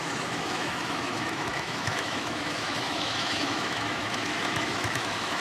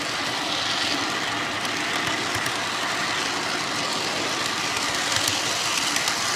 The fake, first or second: first